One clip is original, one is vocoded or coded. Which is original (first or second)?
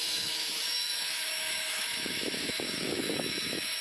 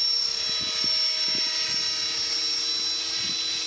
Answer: second